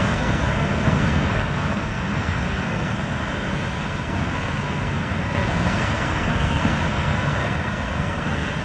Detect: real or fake fake